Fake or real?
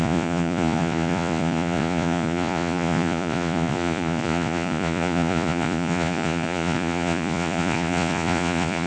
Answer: fake